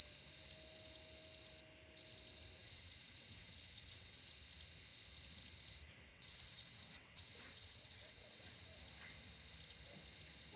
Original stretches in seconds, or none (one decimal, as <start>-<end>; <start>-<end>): 0.0-2.6; 4.3-6.1; 8.8-10.6